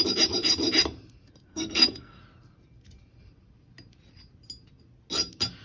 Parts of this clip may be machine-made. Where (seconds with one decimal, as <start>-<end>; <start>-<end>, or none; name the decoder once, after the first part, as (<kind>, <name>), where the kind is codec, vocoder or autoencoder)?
1.5-2.2 (codec, SNAC)

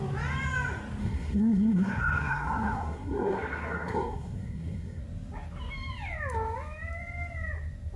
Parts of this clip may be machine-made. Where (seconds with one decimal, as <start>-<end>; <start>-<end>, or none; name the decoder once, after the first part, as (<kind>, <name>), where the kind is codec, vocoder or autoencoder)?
1.0-5.0 (codec, SNAC)

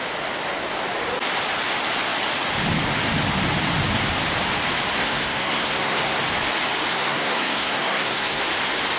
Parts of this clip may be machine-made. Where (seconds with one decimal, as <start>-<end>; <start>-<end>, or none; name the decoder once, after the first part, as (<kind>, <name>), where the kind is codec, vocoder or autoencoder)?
5.0-6.2 (codec, SNAC); 6.9-8.4

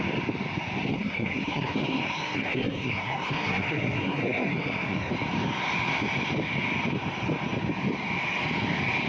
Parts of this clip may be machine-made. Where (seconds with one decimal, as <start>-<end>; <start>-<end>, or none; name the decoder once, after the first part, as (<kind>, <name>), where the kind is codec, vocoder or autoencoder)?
0.9-5.1 (codec, SNAC)

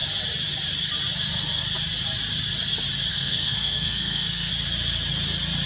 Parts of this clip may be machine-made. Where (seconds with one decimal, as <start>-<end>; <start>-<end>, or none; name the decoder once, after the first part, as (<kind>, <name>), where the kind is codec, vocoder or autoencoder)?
3.1-4.5 (codec, SNAC)

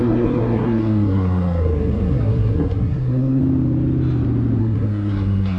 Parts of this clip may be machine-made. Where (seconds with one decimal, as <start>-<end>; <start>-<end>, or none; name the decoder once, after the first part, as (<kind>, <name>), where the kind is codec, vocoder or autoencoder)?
0.0-3.4 (codec, SNAC); 4.6-5.6

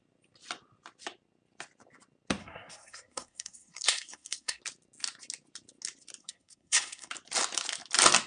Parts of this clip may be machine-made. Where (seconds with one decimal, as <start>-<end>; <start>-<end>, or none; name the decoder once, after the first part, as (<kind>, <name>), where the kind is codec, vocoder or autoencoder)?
2.4-4.6 (codec, SNAC); 6.2-7.1